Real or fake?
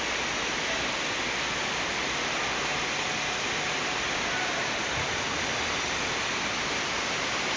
real